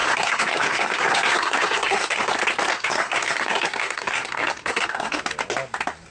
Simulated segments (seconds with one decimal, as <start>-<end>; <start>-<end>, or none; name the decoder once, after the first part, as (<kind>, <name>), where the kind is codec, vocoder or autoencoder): 0.0-2.3 (codec, SNAC); 2.7-5.2